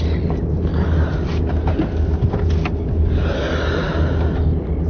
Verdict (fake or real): real